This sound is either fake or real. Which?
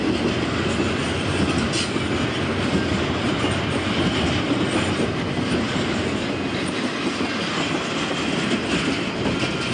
real